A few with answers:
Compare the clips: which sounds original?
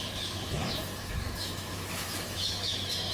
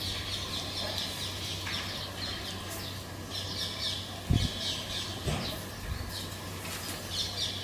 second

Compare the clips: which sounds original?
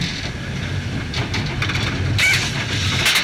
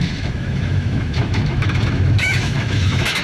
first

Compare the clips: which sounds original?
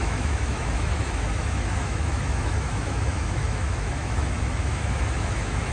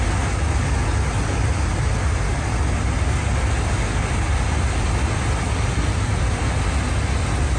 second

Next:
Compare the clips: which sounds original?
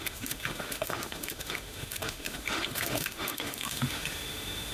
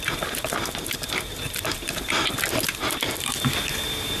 second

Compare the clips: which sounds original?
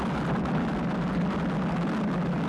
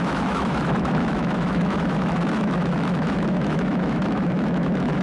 first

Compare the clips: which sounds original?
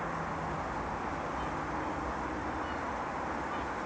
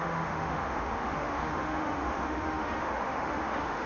first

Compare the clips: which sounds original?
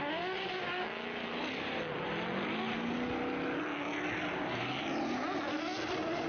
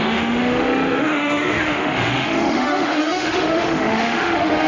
first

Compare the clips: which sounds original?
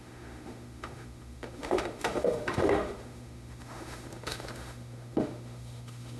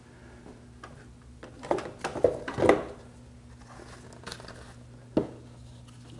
second